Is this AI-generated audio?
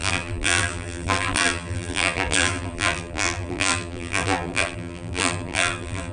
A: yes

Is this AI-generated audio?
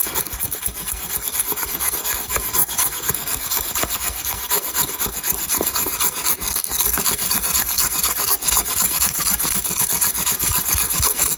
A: yes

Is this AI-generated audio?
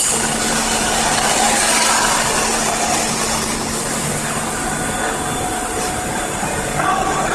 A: no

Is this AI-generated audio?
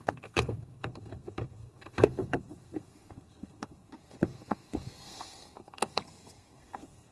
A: yes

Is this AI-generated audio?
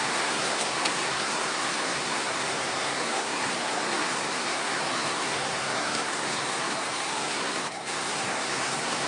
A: yes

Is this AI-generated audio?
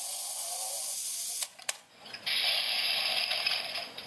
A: yes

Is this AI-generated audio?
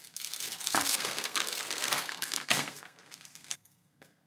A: yes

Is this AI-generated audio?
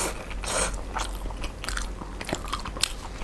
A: no